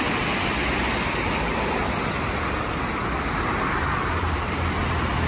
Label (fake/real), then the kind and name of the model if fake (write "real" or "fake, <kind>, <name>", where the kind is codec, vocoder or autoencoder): real